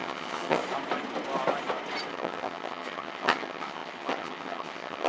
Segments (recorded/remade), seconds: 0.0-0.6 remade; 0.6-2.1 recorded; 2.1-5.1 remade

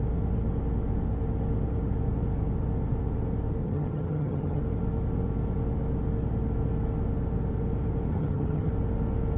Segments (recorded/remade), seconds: 0.0-3.6 recorded; 3.6-4.6 remade; 4.6-8.1 recorded; 8.1-8.7 remade; 8.7-9.4 recorded

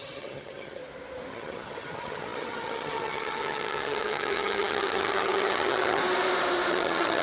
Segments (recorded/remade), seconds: 0.0-0.8 remade; 0.8-1.3 recorded; 1.3-6.0 remade; 6.0-6.7 recorded; 6.7-7.2 remade

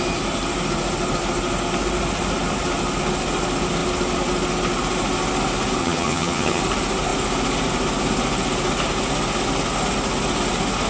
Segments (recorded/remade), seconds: 0.0-5.8 recorded; 5.8-6.6 remade; 6.6-10.9 recorded

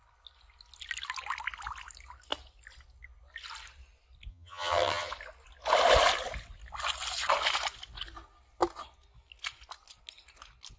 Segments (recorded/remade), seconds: 0.0-4.3 recorded; 4.3-5.1 remade; 5.1-10.8 recorded

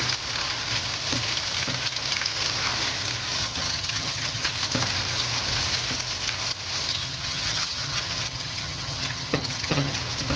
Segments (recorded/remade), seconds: 0.0-3.4 recorded; 3.4-4.5 remade; 4.5-6.9 recorded; 6.9-10.0 remade; 10.0-10.4 recorded

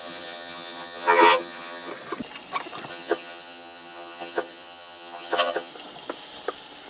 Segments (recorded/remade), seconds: 0.0-1.9 remade; 1.9-2.9 recorded; 2.9-5.7 remade; 5.7-6.9 recorded

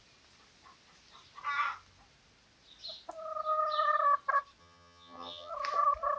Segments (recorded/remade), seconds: 0.0-4.6 recorded; 4.6-5.5 remade; 5.5-6.2 recorded